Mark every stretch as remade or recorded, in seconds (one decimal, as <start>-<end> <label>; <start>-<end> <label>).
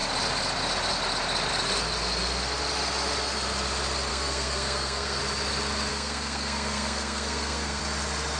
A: 0.0-4.1 recorded; 4.1-5.2 remade; 5.2-5.9 recorded; 5.9-7.8 remade; 7.8-8.4 recorded